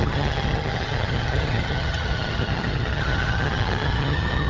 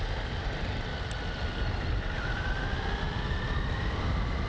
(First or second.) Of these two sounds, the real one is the second